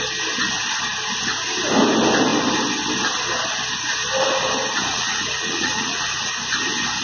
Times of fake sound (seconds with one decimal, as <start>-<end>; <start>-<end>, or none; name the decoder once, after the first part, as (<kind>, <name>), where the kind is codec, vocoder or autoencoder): 4.9-6.3 (vocoder, Vocos)